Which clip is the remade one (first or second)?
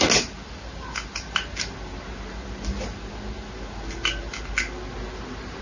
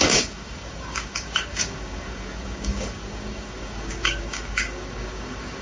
second